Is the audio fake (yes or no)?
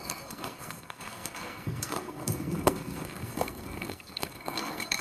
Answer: yes